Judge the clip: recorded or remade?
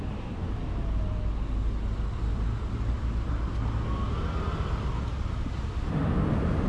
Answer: recorded